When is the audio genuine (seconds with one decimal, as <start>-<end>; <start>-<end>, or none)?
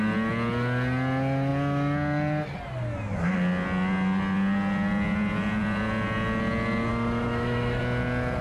0.0-6.9; 7.8-8.4